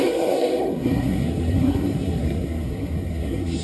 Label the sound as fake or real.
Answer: fake